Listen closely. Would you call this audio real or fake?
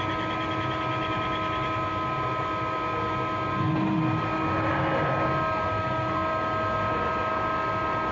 real